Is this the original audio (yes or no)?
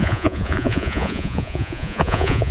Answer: no